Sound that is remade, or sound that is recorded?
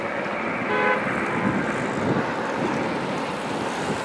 recorded